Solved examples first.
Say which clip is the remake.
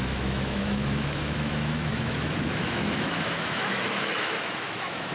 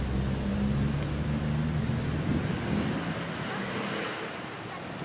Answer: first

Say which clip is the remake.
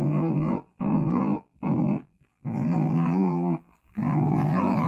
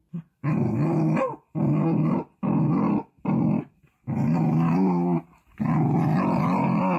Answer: first